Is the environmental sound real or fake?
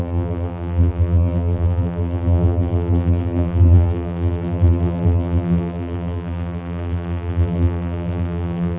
fake